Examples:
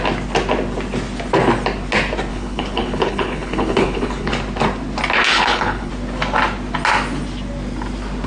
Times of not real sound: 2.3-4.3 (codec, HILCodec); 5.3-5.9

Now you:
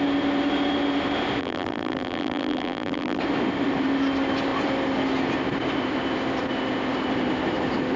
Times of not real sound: 1.4-3.2 (vocoder, BigVGAN v2)

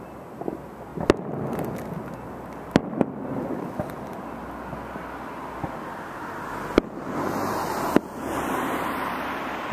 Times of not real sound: none

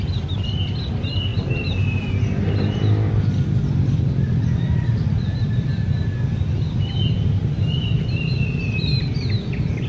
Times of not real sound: none